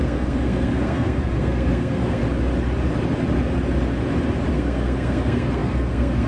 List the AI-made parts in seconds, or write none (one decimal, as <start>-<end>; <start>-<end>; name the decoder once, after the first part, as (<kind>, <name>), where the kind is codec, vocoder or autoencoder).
0.0-2.2 (codec, SNAC); 4.5-6.3